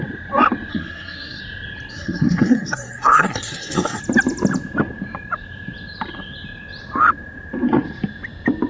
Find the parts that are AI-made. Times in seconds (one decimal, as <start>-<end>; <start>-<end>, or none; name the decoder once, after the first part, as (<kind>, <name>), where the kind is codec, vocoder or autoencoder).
0.7-1.4 (codec, SNAC); 1.9-4.0